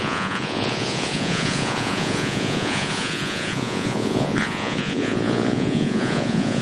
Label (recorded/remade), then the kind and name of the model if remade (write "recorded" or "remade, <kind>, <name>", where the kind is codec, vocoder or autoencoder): remade, vocoder, Vocos